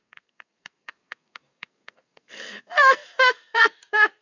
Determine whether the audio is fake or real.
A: fake